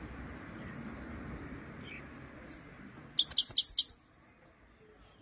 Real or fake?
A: real